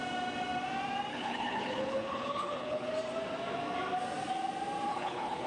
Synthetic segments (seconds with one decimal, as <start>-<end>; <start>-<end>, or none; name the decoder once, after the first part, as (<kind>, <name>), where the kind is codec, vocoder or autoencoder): 1.1-2.9 (codec, HILCodec); 4.9-5.5